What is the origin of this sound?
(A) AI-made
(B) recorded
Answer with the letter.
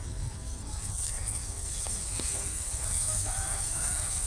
A